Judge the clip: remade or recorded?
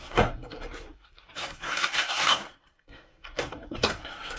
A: remade